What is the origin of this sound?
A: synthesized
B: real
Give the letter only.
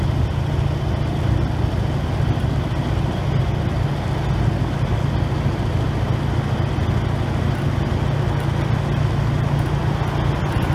B